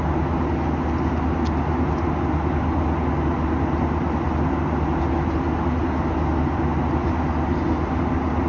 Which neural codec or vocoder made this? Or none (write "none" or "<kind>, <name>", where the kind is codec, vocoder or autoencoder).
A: none